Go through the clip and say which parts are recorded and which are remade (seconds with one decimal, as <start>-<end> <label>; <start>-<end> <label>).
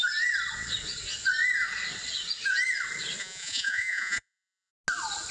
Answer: 0.0-3.2 recorded; 3.2-4.7 remade; 4.7-5.3 recorded